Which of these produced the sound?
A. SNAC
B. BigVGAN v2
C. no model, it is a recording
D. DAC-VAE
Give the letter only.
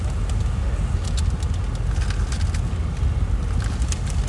C